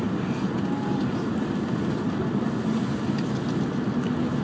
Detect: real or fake real